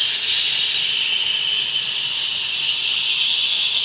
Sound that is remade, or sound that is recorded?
recorded